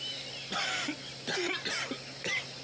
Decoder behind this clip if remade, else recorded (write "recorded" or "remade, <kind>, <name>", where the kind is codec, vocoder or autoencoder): recorded